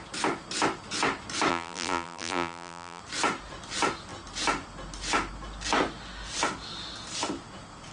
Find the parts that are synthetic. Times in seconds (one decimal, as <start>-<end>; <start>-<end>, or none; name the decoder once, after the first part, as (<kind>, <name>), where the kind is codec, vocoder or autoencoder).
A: 1.5-3.0 (vocoder, BigVGAN v2)